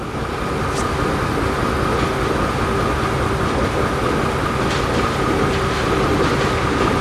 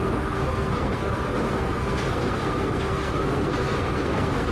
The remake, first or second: second